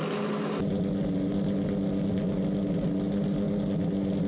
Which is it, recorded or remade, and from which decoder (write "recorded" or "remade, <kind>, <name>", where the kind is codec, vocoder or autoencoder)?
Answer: recorded